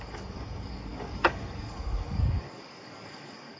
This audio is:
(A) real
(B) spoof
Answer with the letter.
B